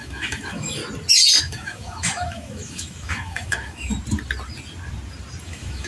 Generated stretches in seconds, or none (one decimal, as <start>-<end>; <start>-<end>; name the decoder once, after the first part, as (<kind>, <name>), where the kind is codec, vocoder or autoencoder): 0.0-0.8 (autoencoder, DAC-VAE); 1.4-3.9; 5.4-5.9